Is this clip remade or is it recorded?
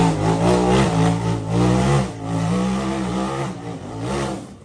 recorded